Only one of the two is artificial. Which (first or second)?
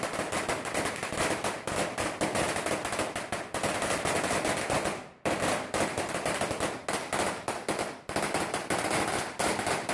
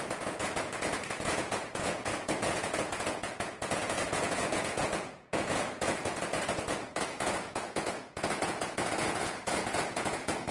second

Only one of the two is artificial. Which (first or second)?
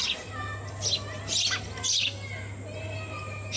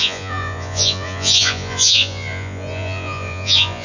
second